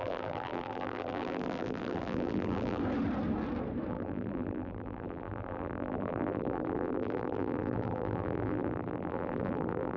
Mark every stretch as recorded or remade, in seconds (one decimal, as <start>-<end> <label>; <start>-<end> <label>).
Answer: 0.0-2.8 remade; 2.8-3.9 recorded; 3.9-10.0 remade